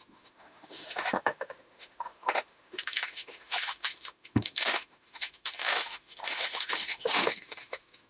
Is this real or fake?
fake